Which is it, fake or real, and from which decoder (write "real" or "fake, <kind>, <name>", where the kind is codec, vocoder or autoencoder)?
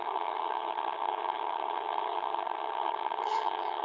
fake, vocoder, HiFi-GAN